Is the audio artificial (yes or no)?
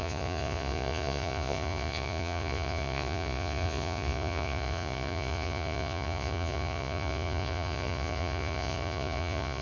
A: yes